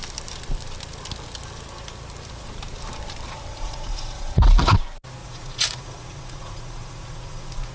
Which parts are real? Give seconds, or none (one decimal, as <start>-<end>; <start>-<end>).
0.0-3.5; 4.4-5.2